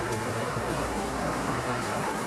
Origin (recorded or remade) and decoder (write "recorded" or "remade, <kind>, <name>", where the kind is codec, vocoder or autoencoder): remade, codec, SNAC